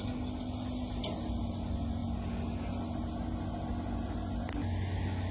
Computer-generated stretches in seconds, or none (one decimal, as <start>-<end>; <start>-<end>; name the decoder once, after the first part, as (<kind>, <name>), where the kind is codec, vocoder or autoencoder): none